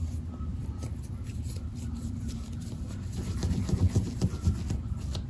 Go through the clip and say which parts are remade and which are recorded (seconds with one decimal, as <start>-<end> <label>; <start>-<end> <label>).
0.0-0.5 recorded; 0.5-3.7 remade; 3.7-5.3 recorded